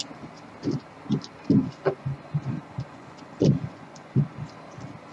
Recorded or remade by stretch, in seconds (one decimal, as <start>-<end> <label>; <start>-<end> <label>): 0.0-1.6 recorded; 1.6-4.5 remade; 4.5-5.1 recorded